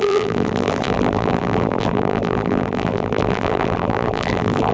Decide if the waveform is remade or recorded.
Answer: remade